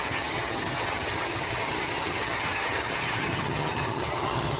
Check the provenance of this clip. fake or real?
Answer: fake